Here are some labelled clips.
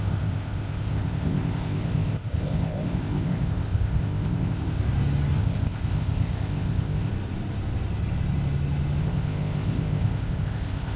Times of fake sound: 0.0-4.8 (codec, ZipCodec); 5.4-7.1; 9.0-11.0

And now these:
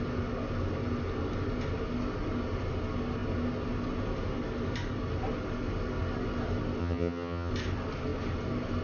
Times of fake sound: 6.8-7.5 (vocoder, HiFi-GAN)

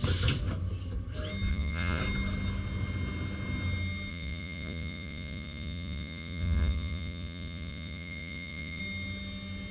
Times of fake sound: 1.5-2.0 (vocoder, Vocos); 4.1-8.8